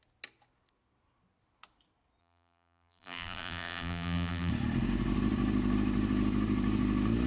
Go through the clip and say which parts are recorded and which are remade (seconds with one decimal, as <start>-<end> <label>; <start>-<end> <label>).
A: 0.0-2.2 recorded; 2.2-4.5 remade; 4.5-7.3 recorded